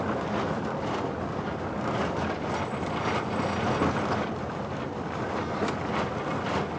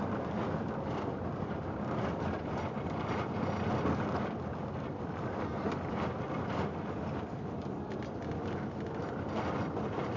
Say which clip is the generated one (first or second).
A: second